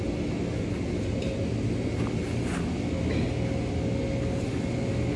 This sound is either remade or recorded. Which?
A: recorded